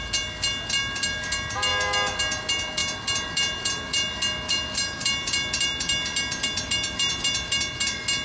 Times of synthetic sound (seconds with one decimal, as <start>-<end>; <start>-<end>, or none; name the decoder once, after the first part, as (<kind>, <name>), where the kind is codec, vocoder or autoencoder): none